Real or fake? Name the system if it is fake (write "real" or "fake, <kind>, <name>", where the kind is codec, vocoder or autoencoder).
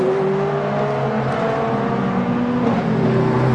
real